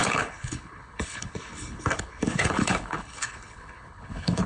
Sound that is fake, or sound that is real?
fake